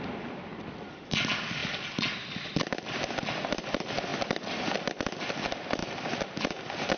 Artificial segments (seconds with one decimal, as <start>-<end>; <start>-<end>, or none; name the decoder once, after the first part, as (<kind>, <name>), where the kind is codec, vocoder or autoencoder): none